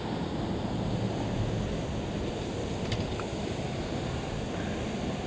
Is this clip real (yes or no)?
yes